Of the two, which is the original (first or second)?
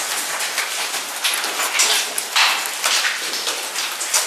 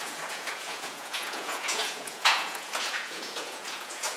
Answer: first